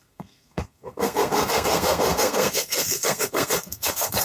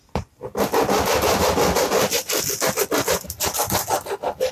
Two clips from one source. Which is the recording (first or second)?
second